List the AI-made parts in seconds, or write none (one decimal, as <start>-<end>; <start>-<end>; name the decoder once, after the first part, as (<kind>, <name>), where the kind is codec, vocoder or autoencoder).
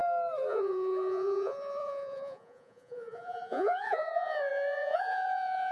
0.5-5.7 (vocoder, Vocos)